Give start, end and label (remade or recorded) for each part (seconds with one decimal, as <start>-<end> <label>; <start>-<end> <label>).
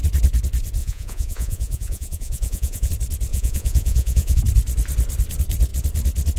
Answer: 0.0-0.8 recorded; 0.8-2.9 remade; 2.9-3.3 recorded; 3.3-4.4 remade; 4.4-6.4 recorded